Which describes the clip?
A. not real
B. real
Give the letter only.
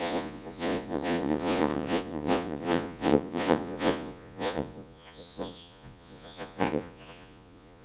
A